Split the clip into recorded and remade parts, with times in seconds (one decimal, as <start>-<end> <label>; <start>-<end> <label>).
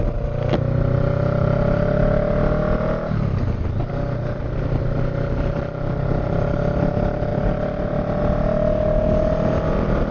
0.0-10.1 recorded